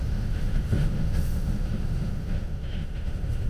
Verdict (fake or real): fake